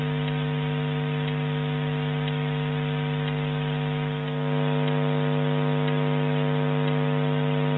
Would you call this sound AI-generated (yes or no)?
no